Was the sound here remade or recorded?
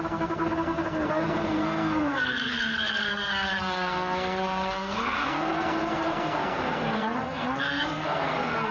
remade